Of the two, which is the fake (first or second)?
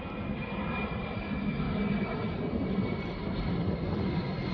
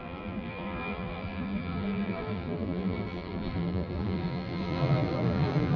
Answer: second